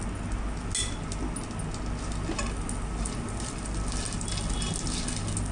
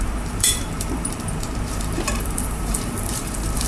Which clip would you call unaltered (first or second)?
first